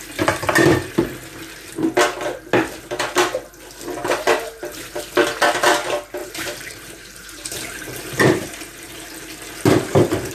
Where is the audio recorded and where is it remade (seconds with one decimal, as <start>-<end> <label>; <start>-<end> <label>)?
0.0-4.0 recorded; 4.0-5.0 remade; 5.0-6.2 recorded; 6.2-9.1 remade; 9.1-10.3 recorded